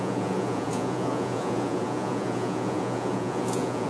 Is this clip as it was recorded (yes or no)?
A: no